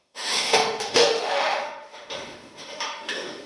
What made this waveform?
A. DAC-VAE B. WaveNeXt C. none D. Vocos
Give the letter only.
A